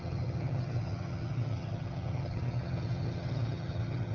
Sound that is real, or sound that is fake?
fake